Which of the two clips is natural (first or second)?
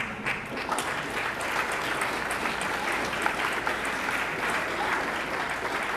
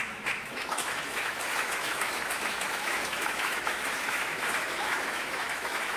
first